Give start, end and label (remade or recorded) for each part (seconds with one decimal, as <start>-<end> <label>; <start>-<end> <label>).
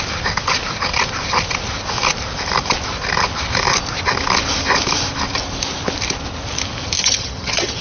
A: 0.0-7.0 recorded; 7.0-7.8 remade